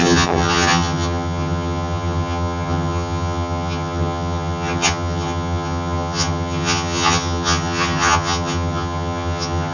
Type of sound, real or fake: fake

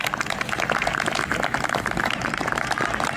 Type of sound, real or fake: real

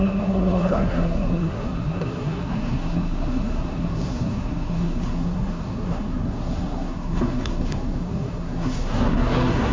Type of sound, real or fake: fake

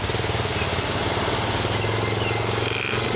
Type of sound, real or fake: real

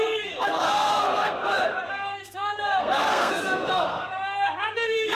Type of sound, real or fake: fake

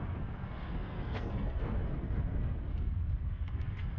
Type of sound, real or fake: fake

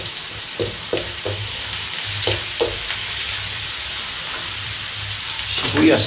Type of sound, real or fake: fake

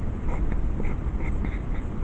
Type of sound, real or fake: real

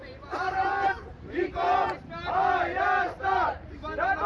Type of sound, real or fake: fake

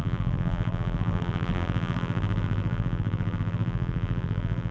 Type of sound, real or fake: fake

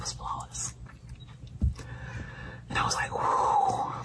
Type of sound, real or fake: real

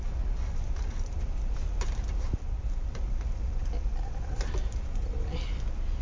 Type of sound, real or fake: real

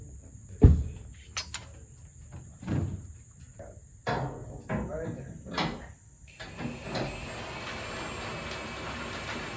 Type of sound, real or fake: real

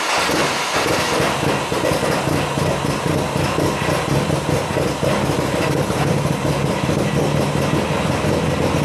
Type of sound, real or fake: real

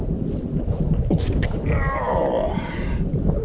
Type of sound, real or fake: real